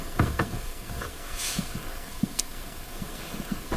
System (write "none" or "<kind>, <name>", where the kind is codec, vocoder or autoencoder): codec, SNAC